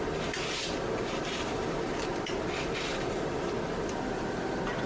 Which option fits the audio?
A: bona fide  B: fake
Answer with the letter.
A